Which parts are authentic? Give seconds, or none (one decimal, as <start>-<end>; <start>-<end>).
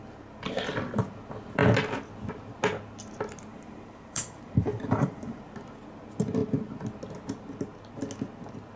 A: 0.0-3.5; 5.4-8.8